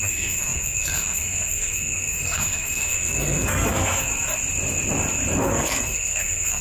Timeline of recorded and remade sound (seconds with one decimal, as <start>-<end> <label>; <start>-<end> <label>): 0.0-4.1 remade; 4.1-5.4 recorded; 5.4-6.6 remade